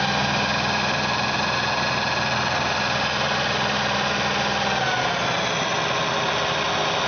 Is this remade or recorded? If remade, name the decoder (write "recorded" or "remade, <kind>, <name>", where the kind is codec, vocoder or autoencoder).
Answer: recorded